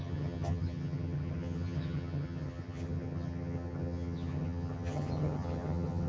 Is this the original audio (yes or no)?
no